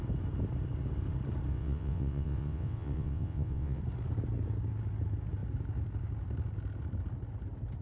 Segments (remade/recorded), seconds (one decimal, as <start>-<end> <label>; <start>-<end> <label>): 0.0-1.5 recorded; 1.5-3.8 remade; 3.8-7.8 recorded